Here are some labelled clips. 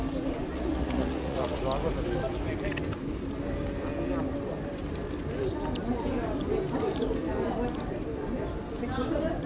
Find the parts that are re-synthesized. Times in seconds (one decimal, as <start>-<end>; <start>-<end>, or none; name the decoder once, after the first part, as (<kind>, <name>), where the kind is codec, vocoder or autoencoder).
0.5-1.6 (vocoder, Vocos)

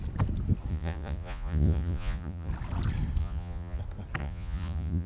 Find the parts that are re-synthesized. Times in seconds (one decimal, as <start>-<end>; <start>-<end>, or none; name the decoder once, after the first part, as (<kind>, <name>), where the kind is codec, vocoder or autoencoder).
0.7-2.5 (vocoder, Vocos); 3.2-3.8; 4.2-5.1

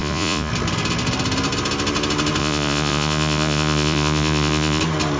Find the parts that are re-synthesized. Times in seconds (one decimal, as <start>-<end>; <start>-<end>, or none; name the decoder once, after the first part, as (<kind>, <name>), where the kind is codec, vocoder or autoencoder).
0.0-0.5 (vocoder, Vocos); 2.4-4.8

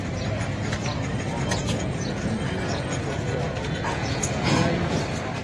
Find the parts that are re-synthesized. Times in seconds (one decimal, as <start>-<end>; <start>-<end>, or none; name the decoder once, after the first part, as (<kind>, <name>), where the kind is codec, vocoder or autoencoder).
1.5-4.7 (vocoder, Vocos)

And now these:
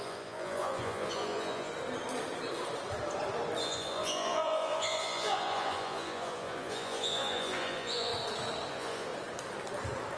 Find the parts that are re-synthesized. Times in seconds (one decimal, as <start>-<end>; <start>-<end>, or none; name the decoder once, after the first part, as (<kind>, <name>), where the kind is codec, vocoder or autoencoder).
0.0-1.7 (vocoder, Vocos); 3.6-8.1; 8.7-9.1

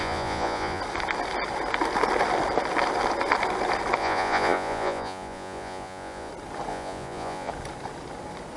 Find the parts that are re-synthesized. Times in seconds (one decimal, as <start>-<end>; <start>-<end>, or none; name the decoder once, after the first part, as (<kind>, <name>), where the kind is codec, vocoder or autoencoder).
0.0-0.8 (vocoder, Vocos); 4.0-6.3; 6.7-7.5

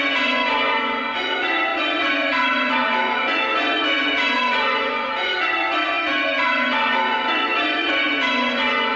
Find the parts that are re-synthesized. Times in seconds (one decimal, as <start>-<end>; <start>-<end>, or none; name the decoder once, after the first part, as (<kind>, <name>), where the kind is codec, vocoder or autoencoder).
0.0-9.0 (vocoder, Vocos)